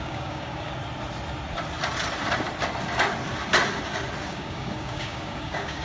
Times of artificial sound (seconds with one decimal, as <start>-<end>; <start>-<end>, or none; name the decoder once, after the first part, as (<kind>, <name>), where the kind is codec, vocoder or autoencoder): 0.0-0.7 (codec, DAC); 4.2-5.8